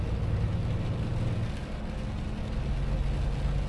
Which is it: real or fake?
real